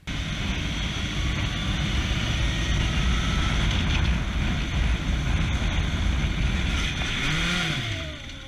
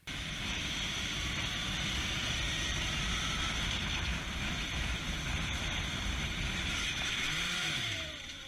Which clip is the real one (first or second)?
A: first